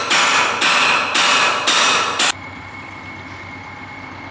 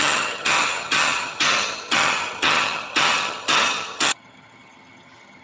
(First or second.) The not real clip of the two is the second